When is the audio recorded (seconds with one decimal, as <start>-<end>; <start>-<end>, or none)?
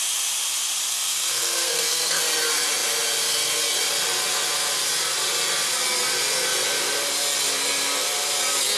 0.0-0.9; 2.2-8.8